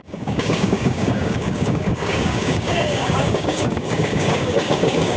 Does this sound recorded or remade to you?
remade